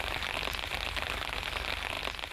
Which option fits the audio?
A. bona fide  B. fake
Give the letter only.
A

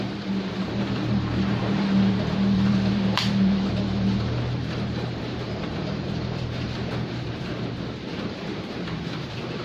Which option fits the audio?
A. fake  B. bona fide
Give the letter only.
A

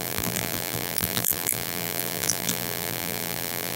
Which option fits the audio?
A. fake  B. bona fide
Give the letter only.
A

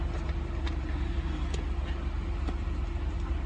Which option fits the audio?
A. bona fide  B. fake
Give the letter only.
A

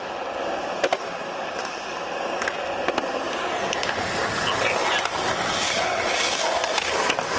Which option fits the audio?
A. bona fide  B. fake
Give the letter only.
A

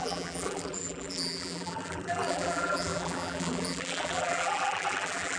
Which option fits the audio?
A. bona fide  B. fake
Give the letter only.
B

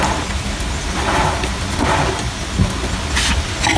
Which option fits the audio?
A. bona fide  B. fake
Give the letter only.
A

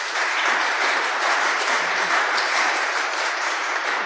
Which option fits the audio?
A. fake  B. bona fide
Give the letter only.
A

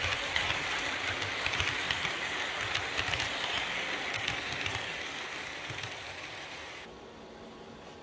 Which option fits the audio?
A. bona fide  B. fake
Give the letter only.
A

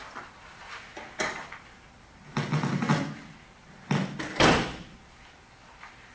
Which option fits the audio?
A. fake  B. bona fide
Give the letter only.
B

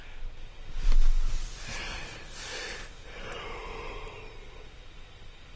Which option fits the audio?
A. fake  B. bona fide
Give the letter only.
B